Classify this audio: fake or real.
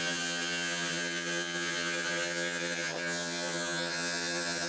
fake